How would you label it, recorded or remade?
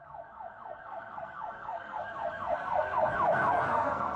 remade